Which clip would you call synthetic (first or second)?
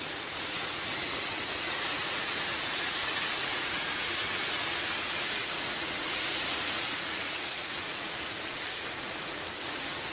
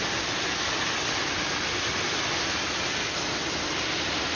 first